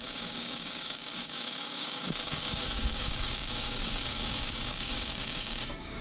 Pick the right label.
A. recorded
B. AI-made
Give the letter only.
B